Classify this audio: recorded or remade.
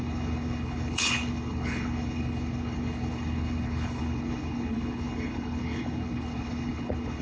remade